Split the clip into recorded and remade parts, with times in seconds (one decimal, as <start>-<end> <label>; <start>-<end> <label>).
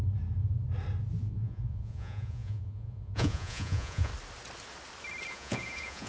0.0-1.2 recorded; 1.2-4.1 remade; 4.1-5.3 recorded; 5.3-6.1 remade